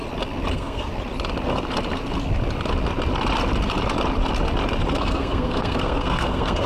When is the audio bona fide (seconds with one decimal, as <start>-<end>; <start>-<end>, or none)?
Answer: 0.0-0.5; 0.9-4.9